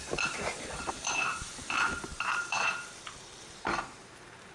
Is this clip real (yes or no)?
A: no